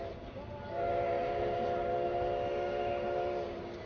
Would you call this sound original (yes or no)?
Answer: yes